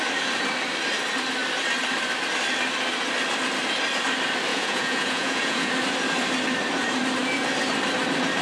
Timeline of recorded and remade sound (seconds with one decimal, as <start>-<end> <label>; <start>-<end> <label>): 0.0-4.5 recorded; 4.5-5.7 remade; 5.7-8.4 recorded